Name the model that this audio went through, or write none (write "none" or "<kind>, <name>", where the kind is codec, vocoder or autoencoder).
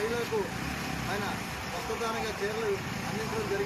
none